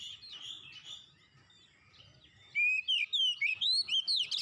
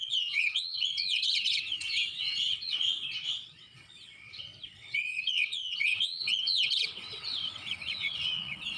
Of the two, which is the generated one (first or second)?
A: second